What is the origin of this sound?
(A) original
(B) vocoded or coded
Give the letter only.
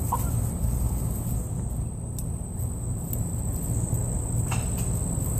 B